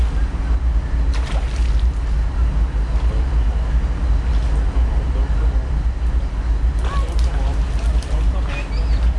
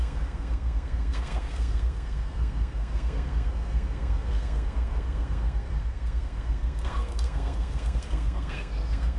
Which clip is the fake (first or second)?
second